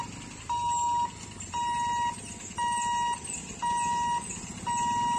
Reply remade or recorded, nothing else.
recorded